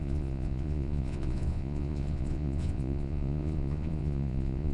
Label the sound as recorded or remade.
remade